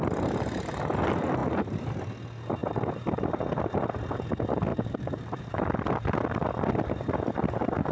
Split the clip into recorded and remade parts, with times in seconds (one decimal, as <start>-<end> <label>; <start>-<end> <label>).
0.0-1.4 recorded; 1.4-2.0 remade; 2.0-2.6 recorded; 2.6-3.3 remade; 3.3-4.7 recorded; 4.7-5.5 remade; 5.5-7.9 recorded